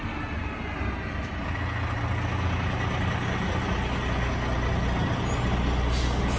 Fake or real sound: real